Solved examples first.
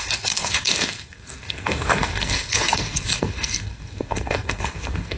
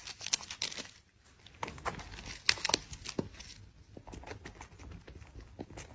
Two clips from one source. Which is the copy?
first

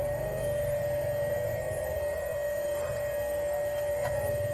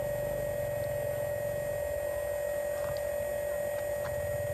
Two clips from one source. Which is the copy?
first